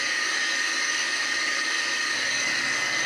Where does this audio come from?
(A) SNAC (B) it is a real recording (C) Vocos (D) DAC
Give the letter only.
D